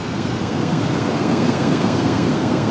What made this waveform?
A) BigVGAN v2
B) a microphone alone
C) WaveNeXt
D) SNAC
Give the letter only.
D